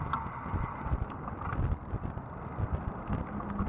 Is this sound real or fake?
real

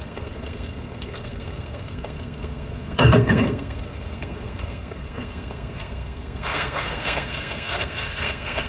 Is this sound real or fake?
fake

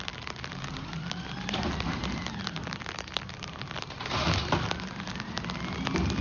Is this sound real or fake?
real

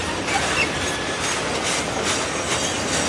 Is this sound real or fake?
real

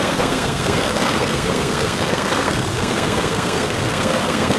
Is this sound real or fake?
fake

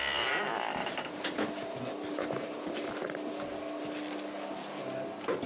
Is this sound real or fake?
real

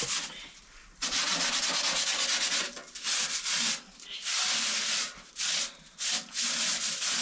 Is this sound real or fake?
real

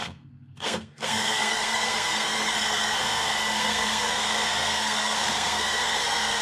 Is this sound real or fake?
fake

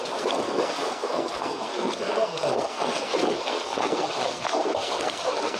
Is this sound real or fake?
fake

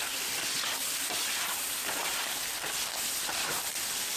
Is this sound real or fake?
real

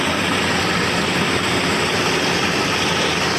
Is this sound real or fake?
real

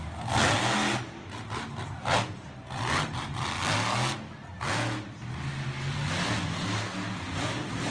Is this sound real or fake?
real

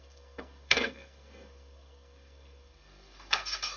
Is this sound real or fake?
fake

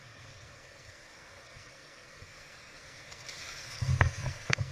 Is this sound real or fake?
fake